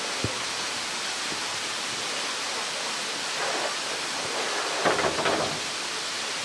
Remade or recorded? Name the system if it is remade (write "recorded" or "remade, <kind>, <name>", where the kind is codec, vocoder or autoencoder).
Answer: recorded